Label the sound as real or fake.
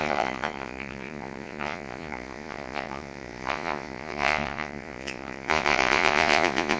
fake